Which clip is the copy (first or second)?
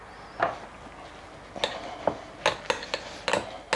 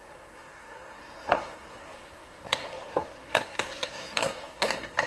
second